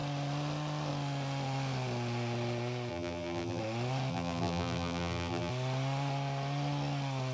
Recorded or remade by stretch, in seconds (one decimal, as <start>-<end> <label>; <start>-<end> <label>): 0.0-2.9 recorded; 2.9-3.6 remade; 3.6-4.1 recorded; 4.1-5.5 remade; 5.5-7.3 recorded